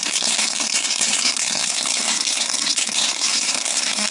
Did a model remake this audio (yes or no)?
yes